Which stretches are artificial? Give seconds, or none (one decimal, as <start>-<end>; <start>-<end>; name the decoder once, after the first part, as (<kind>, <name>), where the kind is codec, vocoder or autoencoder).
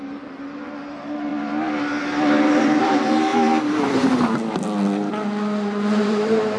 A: 0.0-1.3 (vocoder, BigVGAN v2); 2.8-3.3; 6.0-6.6